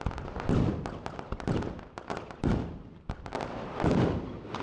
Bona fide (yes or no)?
no